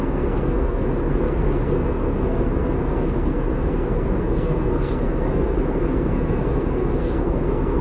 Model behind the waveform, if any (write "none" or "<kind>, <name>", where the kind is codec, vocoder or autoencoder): codec, SNAC